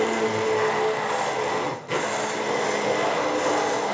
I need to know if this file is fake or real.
real